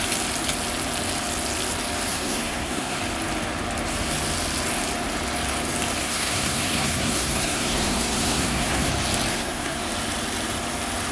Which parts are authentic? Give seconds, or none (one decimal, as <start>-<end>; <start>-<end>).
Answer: 0.0-2.1; 3.0-6.0; 8.9-9.3; 9.8-11.1